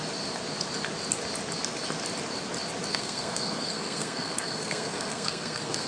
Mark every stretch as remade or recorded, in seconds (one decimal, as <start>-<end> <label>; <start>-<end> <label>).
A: 0.0-2.9 recorded; 2.9-5.9 remade